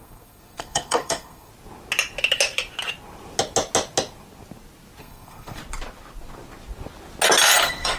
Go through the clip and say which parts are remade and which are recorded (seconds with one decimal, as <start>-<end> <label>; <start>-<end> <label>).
0.0-1.5 remade; 1.5-5.0 recorded; 5.0-5.6 remade; 5.6-7.6 recorded; 7.6-8.0 remade